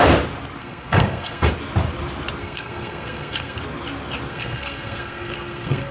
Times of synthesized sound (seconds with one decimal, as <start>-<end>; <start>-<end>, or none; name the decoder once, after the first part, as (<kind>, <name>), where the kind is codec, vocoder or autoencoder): 0.6-1.5 (codec, SNAC); 2.4-3.6; 4.3-5.9